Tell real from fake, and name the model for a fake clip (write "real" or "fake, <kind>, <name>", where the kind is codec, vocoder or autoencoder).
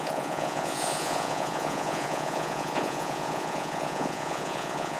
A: fake, vocoder, Vocos